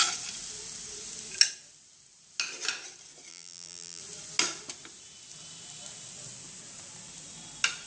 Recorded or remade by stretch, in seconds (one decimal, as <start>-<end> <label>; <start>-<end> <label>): 0.0-3.3 recorded; 3.3-4.0 remade; 4.0-7.9 recorded

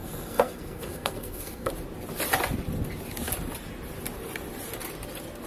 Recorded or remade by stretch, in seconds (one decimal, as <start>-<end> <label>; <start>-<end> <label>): 0.0-1.7 remade; 1.7-5.5 recorded

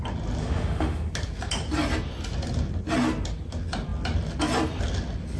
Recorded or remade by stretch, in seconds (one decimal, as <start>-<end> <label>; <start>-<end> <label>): 0.0-0.4 recorded; 0.4-1.1 remade; 1.1-5.4 recorded

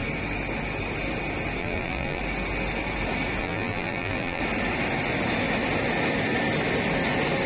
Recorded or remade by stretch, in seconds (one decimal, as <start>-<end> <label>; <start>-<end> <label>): 0.0-1.6 recorded; 1.6-2.2 remade; 2.2-3.4 recorded; 3.4-4.4 remade; 4.4-7.5 recorded

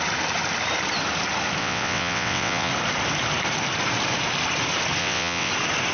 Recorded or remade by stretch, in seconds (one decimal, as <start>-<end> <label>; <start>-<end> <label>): 0.0-1.6 recorded; 1.6-2.7 remade; 2.7-5.0 recorded; 5.0-5.5 remade; 5.5-5.9 recorded

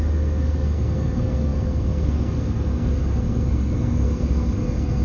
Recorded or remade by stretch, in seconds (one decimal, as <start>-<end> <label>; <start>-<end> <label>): 0.0-5.0 remade

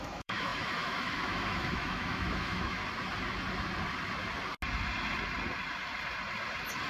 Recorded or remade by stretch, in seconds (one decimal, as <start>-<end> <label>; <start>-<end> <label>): 0.0-2.8 remade; 2.8-6.9 recorded